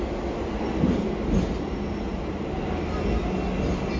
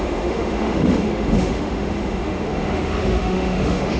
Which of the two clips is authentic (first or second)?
first